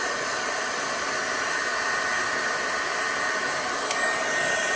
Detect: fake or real real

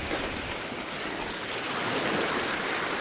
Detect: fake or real real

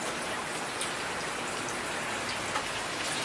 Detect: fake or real real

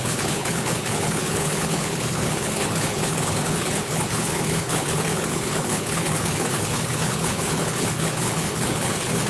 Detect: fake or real fake